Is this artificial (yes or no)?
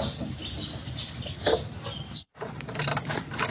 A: no